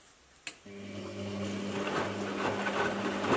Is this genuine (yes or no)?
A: yes